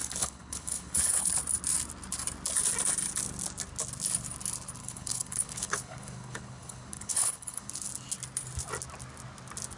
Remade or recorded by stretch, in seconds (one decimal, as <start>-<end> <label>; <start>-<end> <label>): 0.0-1.3 remade; 1.3-4.8 recorded; 4.8-7.7 remade; 7.7-9.8 recorded